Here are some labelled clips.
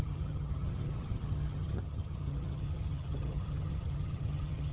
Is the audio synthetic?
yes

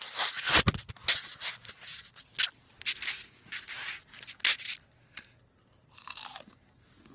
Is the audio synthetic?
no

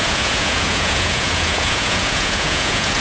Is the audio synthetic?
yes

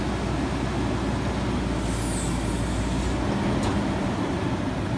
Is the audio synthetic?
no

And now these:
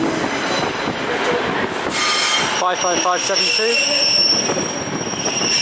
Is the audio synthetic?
no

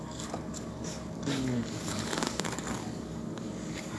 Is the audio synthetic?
yes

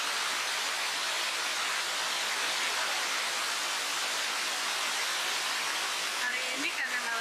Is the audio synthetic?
no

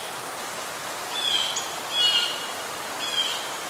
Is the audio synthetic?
no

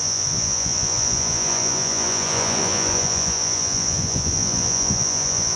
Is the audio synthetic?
yes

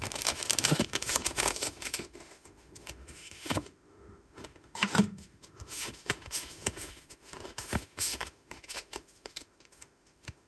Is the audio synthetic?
yes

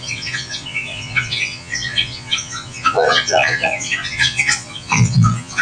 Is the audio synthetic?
yes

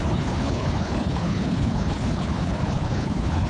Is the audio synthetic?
yes